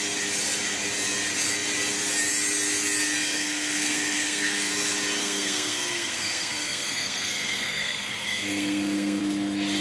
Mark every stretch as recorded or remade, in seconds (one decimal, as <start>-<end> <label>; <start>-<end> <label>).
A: 0.0-3.2 recorded; 3.2-4.7 remade; 4.7-5.2 recorded; 5.2-9.2 remade; 9.2-9.8 recorded